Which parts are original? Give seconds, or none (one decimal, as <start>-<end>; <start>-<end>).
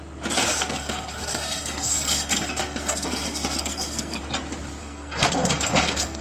0.0-0.5; 4.2-4.8